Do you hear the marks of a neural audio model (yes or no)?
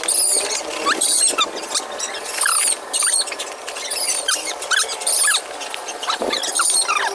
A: no